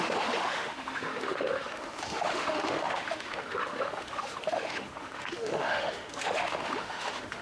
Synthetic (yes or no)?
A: yes